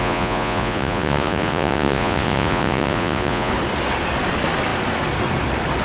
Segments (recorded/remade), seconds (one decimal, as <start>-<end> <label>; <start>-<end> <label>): 0.0-3.5 remade; 3.5-5.8 recorded